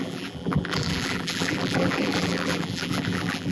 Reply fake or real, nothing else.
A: fake